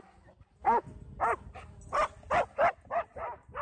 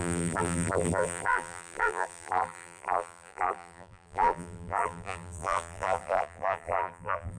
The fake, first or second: second